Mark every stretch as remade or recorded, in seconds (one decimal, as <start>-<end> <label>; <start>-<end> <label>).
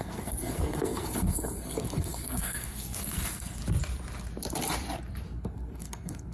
0.0-3.6 remade; 3.6-5.4 recorded; 5.4-6.3 remade